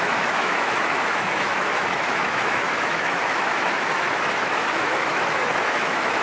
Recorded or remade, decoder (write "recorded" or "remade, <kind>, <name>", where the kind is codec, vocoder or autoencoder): remade, autoencoder, DAC-VAE